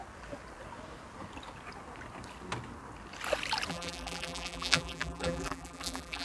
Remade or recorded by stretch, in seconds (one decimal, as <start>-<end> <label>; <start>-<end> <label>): 0.0-3.7 recorded; 3.7-6.2 remade